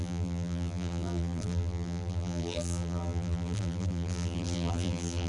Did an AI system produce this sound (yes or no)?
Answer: yes